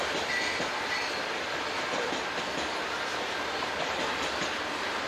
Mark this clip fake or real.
real